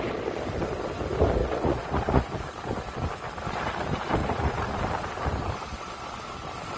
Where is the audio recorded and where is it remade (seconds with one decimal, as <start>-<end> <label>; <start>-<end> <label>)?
0.0-1.4 recorded; 1.4-2.3 remade; 2.3-4.2 recorded; 4.2-4.8 remade; 4.8-6.8 recorded